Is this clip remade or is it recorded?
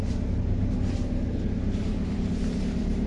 recorded